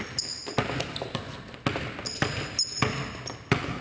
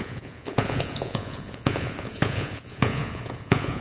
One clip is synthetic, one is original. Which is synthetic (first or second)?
second